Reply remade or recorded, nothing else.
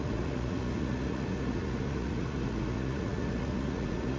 remade